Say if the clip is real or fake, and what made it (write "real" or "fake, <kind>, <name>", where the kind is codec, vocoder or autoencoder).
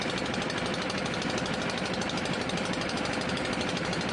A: real